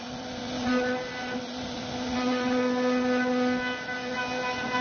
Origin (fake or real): real